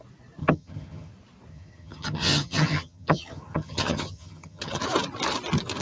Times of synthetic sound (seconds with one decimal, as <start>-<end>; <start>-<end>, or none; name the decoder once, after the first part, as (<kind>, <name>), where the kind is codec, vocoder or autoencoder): 0.4-1.1 (vocoder, HiFi-GAN); 1.5-4.8